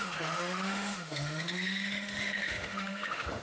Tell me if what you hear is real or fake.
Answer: fake